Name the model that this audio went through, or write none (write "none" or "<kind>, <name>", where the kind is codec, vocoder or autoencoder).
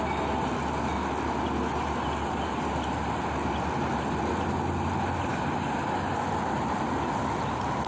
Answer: none